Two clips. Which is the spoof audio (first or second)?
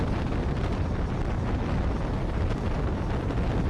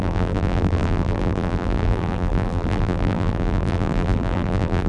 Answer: second